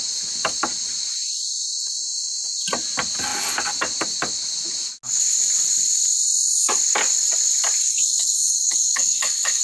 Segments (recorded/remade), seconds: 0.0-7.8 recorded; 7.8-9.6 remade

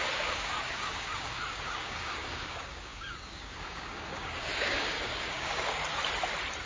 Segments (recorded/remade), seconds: 0.0-5.8 remade; 5.8-6.7 recorded